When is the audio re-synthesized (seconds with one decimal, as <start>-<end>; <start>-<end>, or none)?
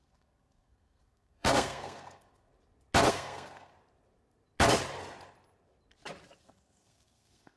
0.0-2.5; 3.1-3.7; 6.4-7.6